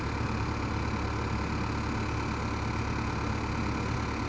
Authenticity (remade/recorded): recorded